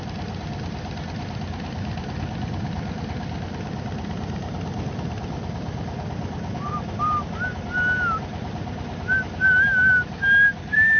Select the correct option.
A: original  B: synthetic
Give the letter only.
A